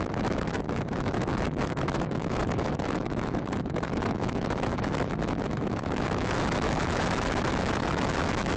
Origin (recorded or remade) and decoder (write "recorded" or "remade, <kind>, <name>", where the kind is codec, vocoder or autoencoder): remade, autoencoder, DAC-VAE